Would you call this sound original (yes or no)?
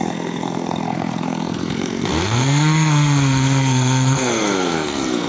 no